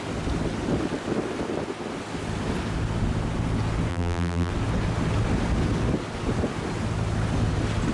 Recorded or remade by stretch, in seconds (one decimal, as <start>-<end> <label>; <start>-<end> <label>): 0.0-3.9 recorded; 3.9-4.5 remade; 4.5-7.9 recorded